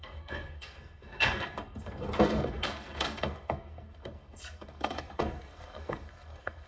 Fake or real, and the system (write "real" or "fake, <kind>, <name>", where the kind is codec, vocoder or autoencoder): fake, codec, SNAC